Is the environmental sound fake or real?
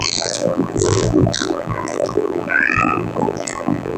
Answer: fake